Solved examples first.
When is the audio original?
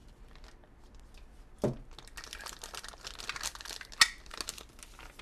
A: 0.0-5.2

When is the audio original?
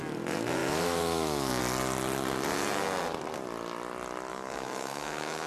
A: 0.0-0.6; 1.6-4.3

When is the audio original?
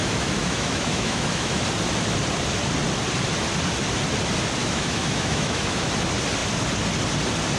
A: 1.6-4.6; 5.9-7.6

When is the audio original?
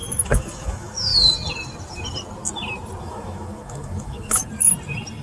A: 1.1-3.0; 4.4-5.2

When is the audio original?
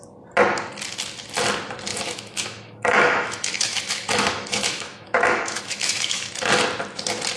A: 0.0-1.9; 6.3-7.4